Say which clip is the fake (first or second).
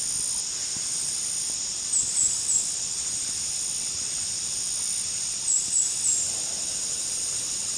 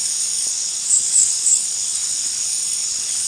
second